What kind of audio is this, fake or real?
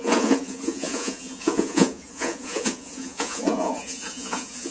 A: fake